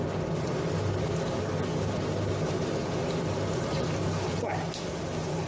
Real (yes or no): yes